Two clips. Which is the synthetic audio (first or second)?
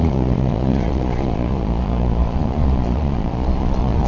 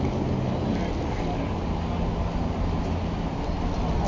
first